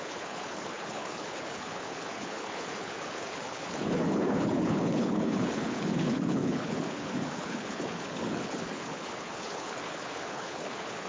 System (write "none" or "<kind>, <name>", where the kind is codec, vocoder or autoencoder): codec, HILCodec